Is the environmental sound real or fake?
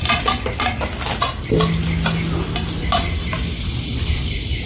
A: real